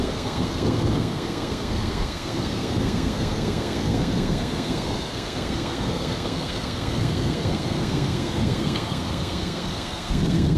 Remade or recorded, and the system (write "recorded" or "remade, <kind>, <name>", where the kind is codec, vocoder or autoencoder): remade, codec, SNAC